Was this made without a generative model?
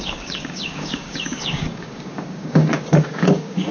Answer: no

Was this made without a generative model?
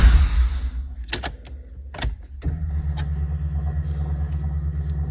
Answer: yes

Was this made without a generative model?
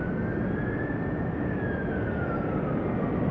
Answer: yes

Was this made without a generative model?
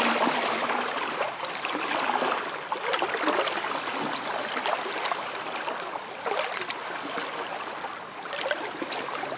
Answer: yes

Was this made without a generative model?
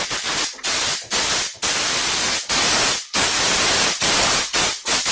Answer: yes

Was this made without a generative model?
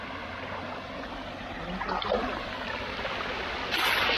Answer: yes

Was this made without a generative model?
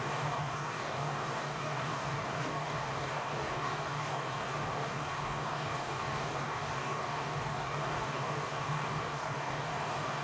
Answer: no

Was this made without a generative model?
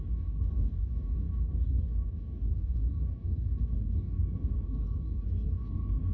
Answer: no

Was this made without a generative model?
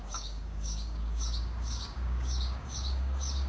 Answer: no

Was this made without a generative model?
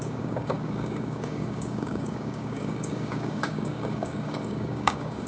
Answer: no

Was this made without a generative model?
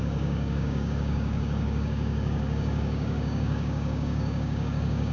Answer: no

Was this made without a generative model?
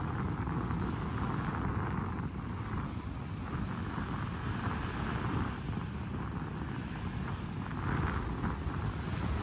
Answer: yes